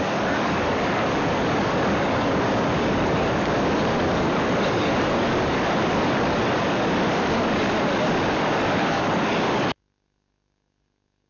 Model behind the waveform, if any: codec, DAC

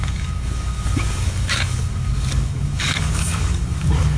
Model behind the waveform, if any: codec, DAC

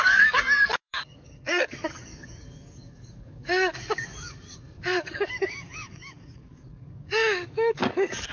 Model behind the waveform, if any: codec, DAC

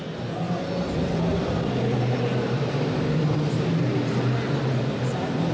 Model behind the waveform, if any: none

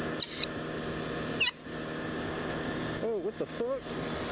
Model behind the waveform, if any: none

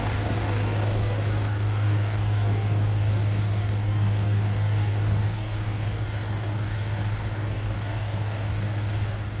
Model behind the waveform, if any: codec, DAC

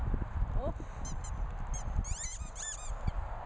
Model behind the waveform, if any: none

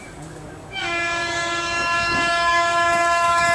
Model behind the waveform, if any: codec, DAC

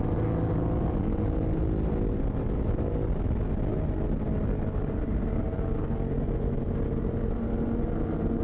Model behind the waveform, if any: none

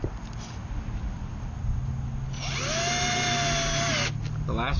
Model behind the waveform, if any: none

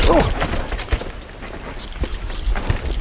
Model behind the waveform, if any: none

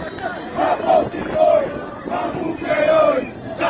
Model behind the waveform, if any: none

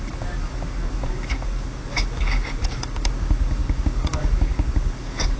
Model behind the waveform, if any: codec, DAC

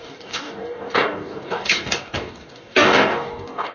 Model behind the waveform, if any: codec, DAC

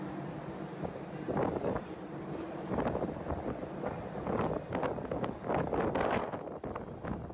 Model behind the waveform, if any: none